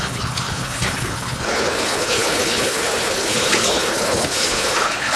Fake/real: fake